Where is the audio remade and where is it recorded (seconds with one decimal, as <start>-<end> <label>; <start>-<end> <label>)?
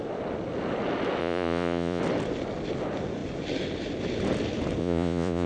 0.0-1.2 recorded; 1.2-2.0 remade; 2.0-4.8 recorded; 4.8-5.5 remade